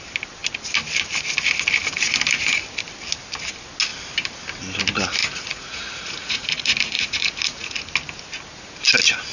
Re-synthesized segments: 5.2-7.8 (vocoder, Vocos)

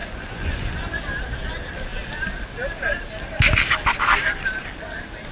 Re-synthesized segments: 0.0-1.0 (vocoder, Vocos)

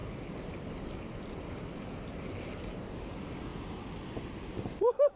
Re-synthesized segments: none

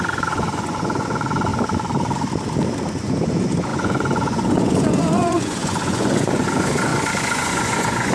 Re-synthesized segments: 0.0-1.5 (vocoder, Vocos); 2.9-8.1

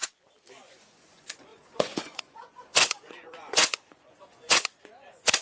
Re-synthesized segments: 0.5-5.4 (vocoder, Vocos)